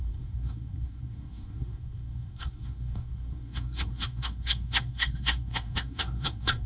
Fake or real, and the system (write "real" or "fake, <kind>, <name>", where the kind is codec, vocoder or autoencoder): fake, codec, SNAC